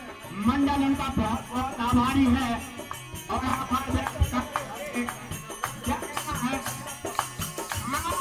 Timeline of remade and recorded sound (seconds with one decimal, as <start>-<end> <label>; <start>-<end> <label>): 0.0-8.2 recorded